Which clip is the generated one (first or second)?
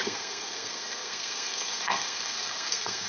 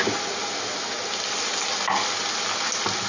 first